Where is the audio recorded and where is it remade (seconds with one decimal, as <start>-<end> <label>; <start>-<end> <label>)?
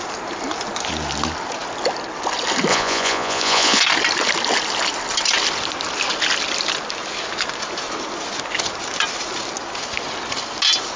0.0-2.7 recorded; 2.7-3.8 remade; 3.8-11.0 recorded